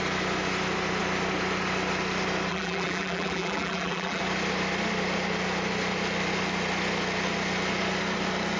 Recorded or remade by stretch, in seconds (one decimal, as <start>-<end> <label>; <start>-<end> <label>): 0.0-2.5 recorded; 2.5-4.2 remade; 4.2-8.6 recorded